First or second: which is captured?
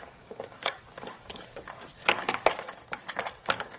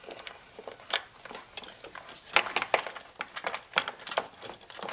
second